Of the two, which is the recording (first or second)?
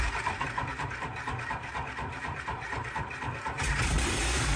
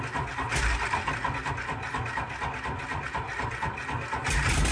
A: second